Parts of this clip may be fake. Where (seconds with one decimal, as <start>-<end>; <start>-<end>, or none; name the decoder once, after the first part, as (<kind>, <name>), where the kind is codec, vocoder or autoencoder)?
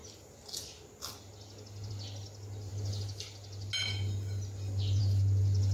none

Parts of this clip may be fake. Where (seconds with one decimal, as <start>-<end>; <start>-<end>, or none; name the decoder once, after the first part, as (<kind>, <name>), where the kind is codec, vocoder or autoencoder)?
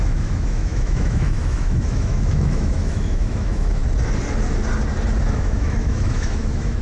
0.0-3.8 (autoencoder, DAC-VAE); 5.3-6.8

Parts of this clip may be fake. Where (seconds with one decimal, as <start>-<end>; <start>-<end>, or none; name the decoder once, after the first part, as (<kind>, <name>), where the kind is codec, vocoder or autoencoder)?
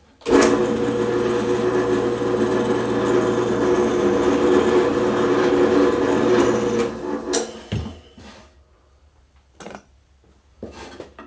none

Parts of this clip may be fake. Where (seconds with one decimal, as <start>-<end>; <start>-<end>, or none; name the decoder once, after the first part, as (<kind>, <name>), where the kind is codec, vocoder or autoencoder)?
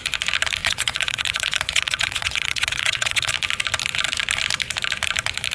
0.6-3.3 (vocoder, WaveNeXt)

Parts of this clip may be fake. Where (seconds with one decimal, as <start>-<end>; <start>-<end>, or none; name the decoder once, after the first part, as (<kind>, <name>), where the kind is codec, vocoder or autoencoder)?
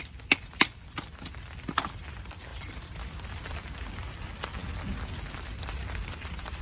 0.0-4.6 (vocoder, BigVGAN v2); 5.1-6.6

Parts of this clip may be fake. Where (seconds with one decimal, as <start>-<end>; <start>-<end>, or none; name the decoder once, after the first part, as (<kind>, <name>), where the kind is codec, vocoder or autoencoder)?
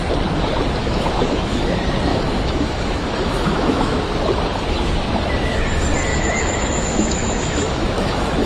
0.8-1.6 (autoencoder, DAC-VAE); 2.1-4.0; 6.1-8.5